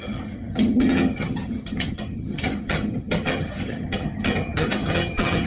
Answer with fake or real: fake